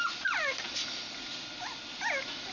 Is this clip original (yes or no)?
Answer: yes